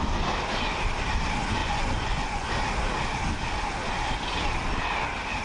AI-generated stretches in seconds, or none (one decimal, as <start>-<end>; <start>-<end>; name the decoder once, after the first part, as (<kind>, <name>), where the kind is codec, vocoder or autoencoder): 1.6-2.5 (vocoder, Vocos)